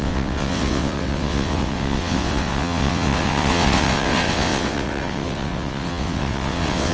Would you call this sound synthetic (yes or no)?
yes